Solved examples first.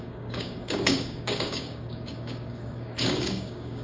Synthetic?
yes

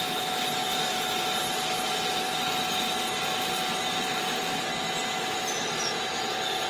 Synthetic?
no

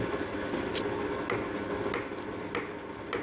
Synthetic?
no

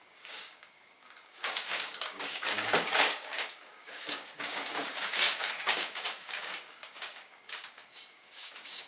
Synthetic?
yes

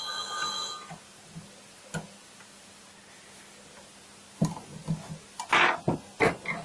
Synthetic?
no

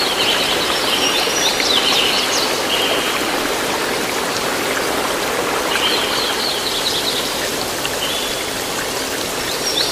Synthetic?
no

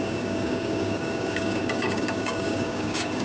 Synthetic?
yes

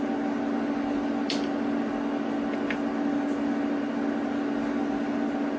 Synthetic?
no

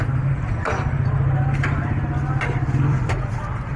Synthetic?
no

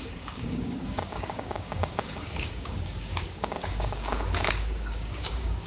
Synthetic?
yes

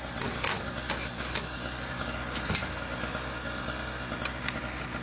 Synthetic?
no